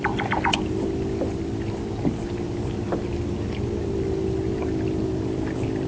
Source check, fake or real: real